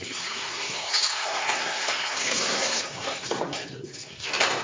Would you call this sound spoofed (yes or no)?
yes